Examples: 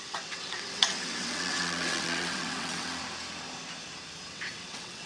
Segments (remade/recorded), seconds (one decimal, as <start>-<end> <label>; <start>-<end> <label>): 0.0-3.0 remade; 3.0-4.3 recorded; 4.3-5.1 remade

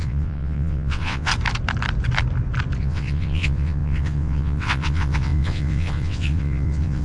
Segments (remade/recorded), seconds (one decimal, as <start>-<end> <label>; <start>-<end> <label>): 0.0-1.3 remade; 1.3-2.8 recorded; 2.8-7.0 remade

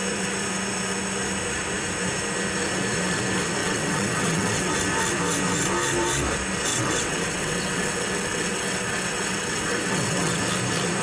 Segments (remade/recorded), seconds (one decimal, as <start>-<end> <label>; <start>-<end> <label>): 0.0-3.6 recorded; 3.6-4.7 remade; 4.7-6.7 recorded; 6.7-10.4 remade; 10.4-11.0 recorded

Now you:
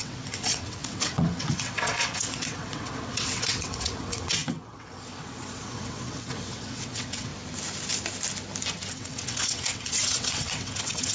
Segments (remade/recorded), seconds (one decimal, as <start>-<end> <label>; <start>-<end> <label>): 0.0-7.3 remade; 7.3-8.9 recorded; 8.9-11.1 remade

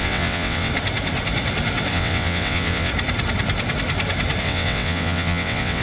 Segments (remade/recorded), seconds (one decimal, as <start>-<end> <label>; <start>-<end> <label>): 0.0-0.7 remade; 0.7-1.9 recorded; 1.9-2.9 remade; 2.9-4.4 recorded; 4.4-5.8 remade

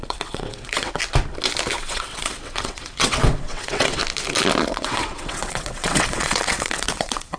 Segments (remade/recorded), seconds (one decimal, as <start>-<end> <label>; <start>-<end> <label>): 0.0-1.0 remade; 1.0-1.8 recorded; 1.8-4.0 remade; 4.0-4.7 recorded; 4.7-7.4 remade

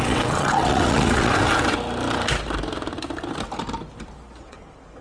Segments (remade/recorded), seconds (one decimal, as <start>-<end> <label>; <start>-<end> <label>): 0.0-1.4 remade; 1.4-4.4 recorded; 4.4-5.0 remade